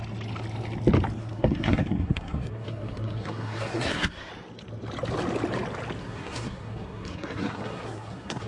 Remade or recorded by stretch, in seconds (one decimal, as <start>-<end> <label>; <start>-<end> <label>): 0.0-1.2 recorded; 1.2-4.3 remade; 4.3-6.0 recorded; 6.0-8.5 remade